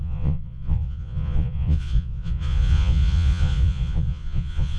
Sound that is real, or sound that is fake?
fake